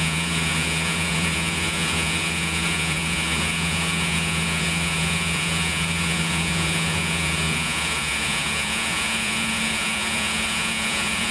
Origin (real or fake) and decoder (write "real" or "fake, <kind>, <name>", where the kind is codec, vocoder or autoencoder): fake, vocoder, Vocos